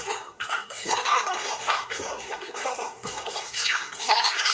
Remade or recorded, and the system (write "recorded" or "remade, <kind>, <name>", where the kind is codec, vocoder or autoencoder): remade, codec, SNAC